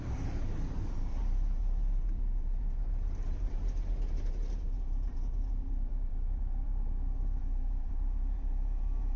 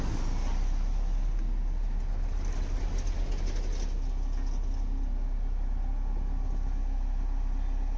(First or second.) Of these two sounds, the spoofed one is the first